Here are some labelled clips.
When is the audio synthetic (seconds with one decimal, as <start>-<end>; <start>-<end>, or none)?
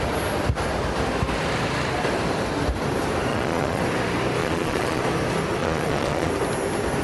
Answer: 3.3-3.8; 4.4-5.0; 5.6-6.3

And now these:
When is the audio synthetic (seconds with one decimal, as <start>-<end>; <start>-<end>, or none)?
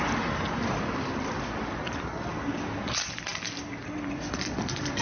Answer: none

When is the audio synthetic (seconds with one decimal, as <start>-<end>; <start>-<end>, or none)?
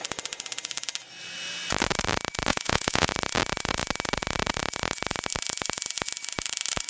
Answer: 2.5-3.1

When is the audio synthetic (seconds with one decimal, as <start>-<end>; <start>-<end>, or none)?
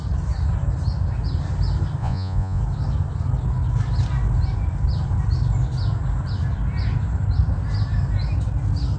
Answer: 2.0-2.6